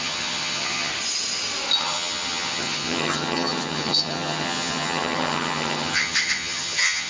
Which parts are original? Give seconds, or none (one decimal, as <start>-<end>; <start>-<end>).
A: 0.9-1.8